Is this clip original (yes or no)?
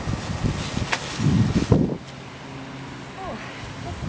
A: yes